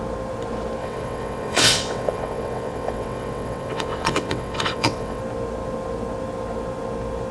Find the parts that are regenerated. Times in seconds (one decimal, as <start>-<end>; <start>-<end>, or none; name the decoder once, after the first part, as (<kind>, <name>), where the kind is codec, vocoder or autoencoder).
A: 0.8-5.2 (vocoder, WaveNeXt)